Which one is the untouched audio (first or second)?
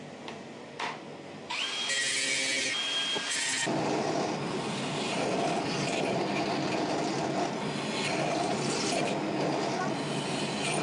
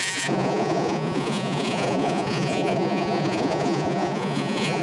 first